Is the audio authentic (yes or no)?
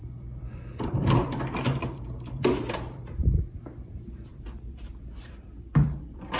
no